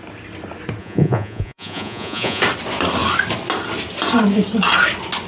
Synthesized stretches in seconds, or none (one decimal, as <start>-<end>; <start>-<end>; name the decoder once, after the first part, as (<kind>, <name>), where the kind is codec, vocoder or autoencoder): 0.8-2.4 (vocoder, Vocos)